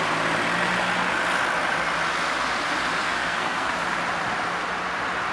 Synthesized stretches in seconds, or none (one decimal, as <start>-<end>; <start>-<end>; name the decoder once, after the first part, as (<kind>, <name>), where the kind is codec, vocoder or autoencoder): 3.0-3.7 (codec, SNAC)